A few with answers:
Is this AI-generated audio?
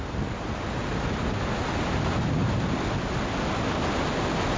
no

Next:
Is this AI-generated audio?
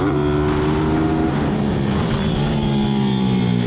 no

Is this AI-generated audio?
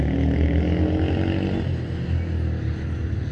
no